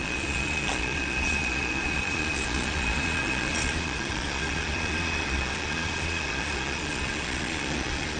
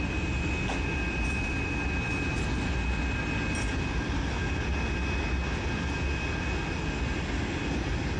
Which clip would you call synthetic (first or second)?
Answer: first